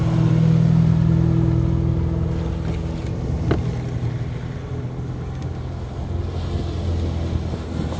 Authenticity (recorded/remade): recorded